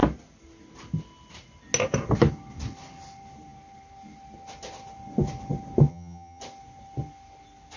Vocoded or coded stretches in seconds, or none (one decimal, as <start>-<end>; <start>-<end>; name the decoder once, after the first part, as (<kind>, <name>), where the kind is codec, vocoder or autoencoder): 5.9-6.4 (vocoder, HiFi-GAN)